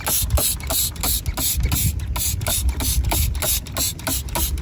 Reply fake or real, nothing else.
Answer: real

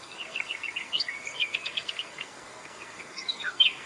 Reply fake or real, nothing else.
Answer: fake